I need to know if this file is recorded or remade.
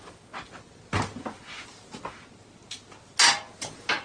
recorded